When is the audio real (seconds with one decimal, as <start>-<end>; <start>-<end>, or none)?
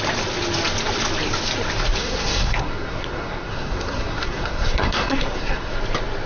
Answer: 0.0-2.0; 5.8-6.3